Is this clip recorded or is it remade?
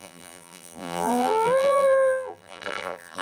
remade